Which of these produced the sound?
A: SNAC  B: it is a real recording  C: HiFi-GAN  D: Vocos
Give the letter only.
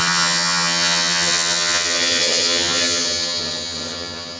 C